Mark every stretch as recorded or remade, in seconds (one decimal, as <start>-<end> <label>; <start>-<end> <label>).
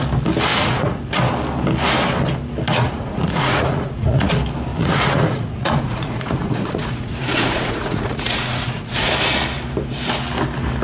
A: 0.0-0.5 recorded; 0.5-1.1 remade; 1.1-2.7 recorded; 2.7-4.3 remade; 4.3-4.7 recorded; 4.7-9.1 remade; 9.1-10.8 recorded